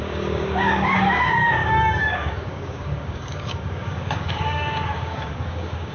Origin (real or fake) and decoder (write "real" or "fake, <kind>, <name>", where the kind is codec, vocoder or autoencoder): fake, codec, DAC